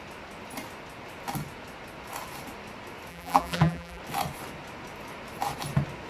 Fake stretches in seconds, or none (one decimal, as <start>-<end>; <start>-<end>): 3.1-4.0